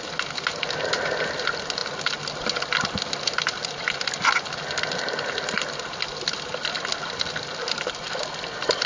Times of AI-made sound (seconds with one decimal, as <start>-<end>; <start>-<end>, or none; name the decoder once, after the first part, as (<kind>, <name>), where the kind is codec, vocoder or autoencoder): none